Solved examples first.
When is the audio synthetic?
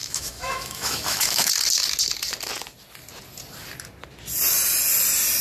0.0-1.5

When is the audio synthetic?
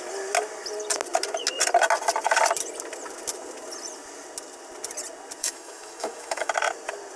5.4-6.5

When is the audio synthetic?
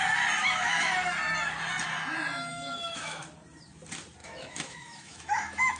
0.4-0.9; 2.5-3.2; 4.2-5.8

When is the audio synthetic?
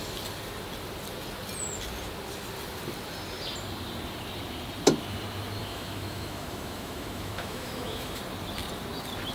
5.6-8.2